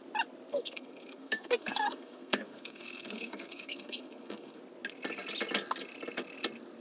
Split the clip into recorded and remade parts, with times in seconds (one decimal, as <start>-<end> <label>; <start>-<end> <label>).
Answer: 0.0-0.5 recorded; 0.5-4.6 remade; 4.6-6.8 recorded

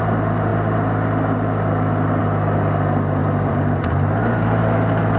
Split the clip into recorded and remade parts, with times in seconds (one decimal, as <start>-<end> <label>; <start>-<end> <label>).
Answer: 0.0-3.2 recorded; 3.2-4.6 remade; 4.6-5.2 recorded

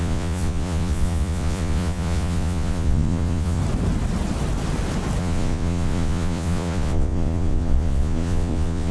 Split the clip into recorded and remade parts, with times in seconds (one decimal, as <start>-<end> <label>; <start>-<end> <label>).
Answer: 0.0-3.6 remade; 3.6-5.2 recorded; 5.2-8.9 remade